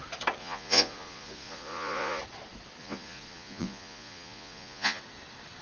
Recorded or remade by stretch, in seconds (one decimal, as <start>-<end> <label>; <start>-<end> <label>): 0.0-0.4 recorded; 0.4-2.2 remade; 2.2-2.8 recorded; 2.8-5.0 remade; 5.0-5.6 recorded

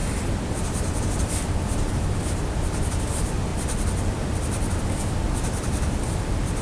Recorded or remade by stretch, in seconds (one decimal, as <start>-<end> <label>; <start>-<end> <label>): 0.0-6.6 remade

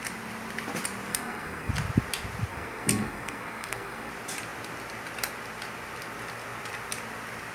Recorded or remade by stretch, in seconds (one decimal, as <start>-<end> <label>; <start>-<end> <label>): 0.0-1.1 recorded; 1.1-1.7 remade; 1.7-2.5 recorded; 2.5-4.1 remade; 4.1-7.5 recorded

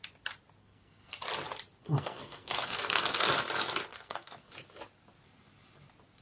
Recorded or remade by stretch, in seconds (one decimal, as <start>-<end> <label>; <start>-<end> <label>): 0.0-0.6 recorded; 0.6-1.2 remade; 1.2-1.8 recorded; 1.8-3.3 remade; 3.3-3.9 recorded; 3.9-4.5 remade; 4.5-6.2 recorded